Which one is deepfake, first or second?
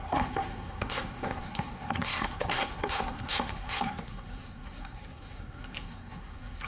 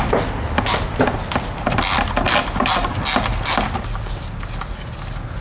first